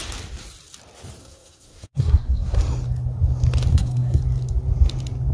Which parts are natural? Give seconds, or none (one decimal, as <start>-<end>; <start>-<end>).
0.0-1.2; 2.6-3.7; 4.2-5.3